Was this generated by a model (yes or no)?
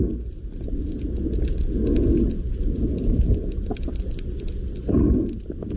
no